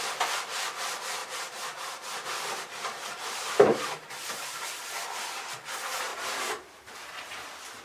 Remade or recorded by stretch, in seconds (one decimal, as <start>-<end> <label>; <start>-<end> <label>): 0.0-1.2 recorded; 1.2-5.5 remade; 5.5-6.1 recorded; 6.1-7.3 remade; 7.3-7.8 recorded